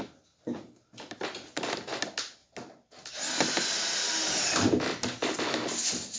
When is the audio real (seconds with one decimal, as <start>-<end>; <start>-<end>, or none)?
0.0-6.2